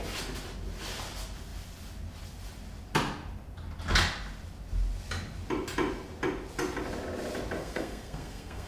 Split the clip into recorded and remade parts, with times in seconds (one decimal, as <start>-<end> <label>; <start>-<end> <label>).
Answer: 0.0-7.6 recorded; 7.6-8.7 remade